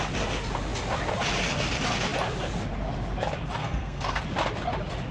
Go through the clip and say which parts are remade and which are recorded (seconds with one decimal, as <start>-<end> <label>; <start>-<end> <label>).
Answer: 0.0-3.6 recorded; 3.6-4.2 remade; 4.2-5.1 recorded